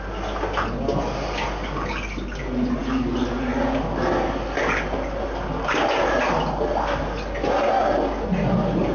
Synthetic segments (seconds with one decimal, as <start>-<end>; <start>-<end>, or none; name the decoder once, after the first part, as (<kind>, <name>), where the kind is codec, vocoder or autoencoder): none

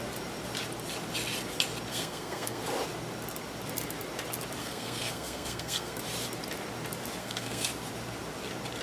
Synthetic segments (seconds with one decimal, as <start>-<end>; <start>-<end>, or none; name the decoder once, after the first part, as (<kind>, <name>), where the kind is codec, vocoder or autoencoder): 1.9-2.6 (codec, SNAC); 4.6-6.0; 7.2-7.7

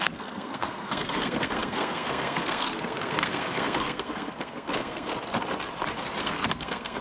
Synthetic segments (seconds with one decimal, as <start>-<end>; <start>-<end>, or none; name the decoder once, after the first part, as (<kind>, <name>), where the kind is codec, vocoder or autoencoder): 0.0-5.1 (codec, SNAC); 6.2-7.0

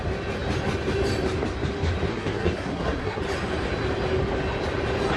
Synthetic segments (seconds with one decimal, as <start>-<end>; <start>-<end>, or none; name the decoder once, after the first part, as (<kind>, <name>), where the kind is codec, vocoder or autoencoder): 2.1-3.2 (codec, SNAC)

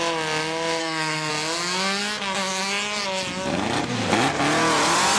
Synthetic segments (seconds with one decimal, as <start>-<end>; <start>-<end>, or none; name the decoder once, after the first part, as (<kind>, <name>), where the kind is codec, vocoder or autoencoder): 0.8-1.3 (codec, SNAC)